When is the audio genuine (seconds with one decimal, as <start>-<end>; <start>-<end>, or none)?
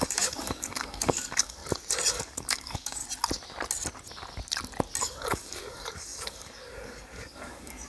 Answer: 1.6-2.1; 3.0-5.0